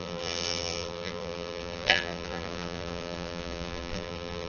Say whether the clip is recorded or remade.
remade